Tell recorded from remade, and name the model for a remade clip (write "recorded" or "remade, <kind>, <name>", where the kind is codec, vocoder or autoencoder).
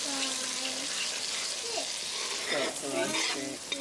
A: recorded